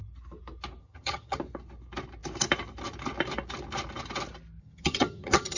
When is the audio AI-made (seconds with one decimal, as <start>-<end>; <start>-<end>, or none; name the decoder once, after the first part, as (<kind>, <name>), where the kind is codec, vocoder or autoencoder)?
0.8-1.4 (vocoder, HiFi-GAN); 4.6-5.6